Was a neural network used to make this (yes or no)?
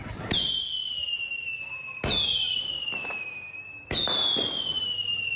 no